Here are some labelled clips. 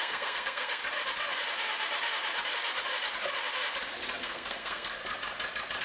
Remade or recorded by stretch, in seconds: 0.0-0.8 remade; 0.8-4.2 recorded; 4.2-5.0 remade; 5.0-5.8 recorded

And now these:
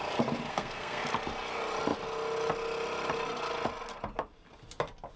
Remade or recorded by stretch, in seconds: 0.0-0.5 recorded; 0.5-1.0 remade; 1.0-5.2 recorded

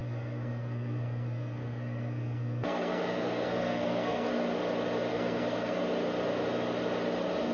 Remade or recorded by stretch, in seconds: 0.0-4.3 remade; 4.3-5.1 recorded; 5.1-5.8 remade; 5.8-7.5 recorded

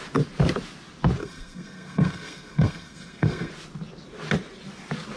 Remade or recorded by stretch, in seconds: 0.0-1.2 recorded; 1.2-3.5 remade; 3.5-5.2 recorded

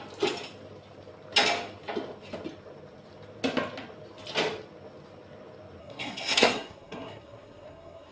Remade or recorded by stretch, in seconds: 0.0-5.8 recorded; 5.8-8.1 remade

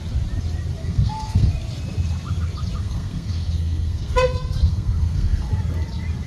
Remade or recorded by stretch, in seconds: 0.0-0.8 recorded; 0.8-1.5 remade; 1.5-2.8 recorded; 2.8-5.5 remade; 5.5-6.3 recorded

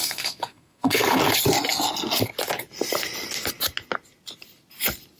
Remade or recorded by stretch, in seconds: 0.0-1.2 remade; 1.2-5.2 recorded